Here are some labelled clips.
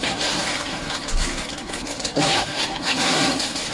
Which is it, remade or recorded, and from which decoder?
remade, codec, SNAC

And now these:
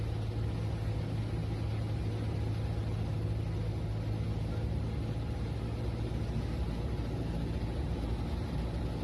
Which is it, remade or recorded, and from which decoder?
recorded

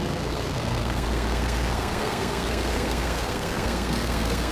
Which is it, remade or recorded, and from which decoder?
remade, codec, SNAC